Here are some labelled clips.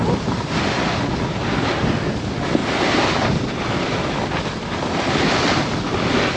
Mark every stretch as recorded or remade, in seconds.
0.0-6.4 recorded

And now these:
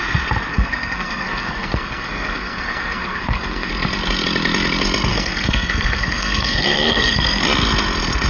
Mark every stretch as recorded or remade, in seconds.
0.0-0.5 recorded; 0.5-3.7 remade; 3.7-5.1 recorded; 5.1-7.4 remade; 7.4-8.3 recorded